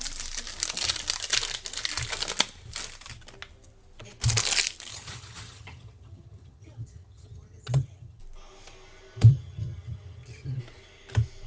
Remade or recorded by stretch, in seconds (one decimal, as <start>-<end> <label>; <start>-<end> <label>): 0.0-4.9 recorded; 4.9-8.2 remade; 8.2-9.3 recorded; 9.3-10.6 remade; 10.6-11.5 recorded